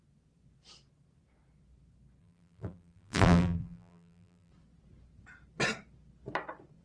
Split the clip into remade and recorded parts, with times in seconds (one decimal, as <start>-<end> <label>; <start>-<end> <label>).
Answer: 0.0-2.2 recorded; 2.2-4.5 remade; 4.5-6.8 recorded